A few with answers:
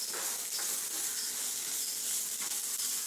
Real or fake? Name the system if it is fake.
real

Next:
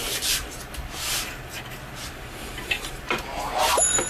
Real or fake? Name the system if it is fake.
fake, vocoder, BigVGAN v2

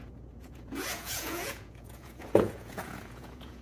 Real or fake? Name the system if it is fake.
fake, vocoder, Vocos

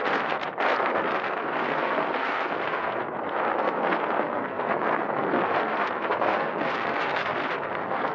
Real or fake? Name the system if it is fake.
fake, codec, SNAC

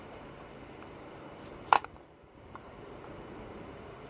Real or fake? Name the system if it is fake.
fake, vocoder, BigVGAN v2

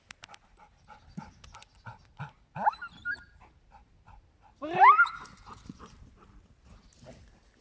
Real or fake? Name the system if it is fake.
real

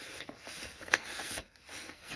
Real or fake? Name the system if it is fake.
fake, codec, SNAC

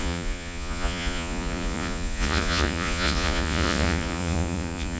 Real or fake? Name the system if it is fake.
fake, vocoder, Vocos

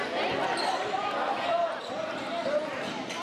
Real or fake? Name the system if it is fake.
real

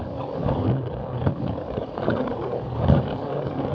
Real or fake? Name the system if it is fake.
fake, codec, DAC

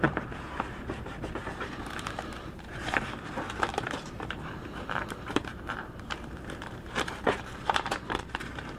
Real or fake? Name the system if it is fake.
fake, vocoder, BigVGAN v2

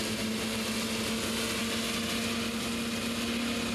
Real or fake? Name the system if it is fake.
real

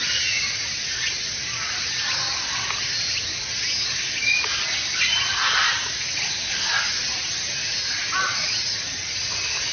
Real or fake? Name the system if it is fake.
real